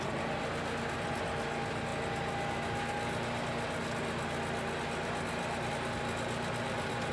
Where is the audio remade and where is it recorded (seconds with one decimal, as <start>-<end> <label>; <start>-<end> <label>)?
0.0-7.1 recorded